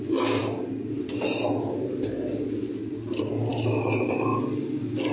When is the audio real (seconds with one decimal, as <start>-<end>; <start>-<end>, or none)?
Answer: 0.0-5.1